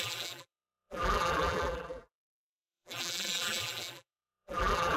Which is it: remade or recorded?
remade